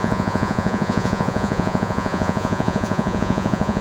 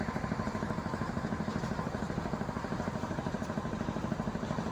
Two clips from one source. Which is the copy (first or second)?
first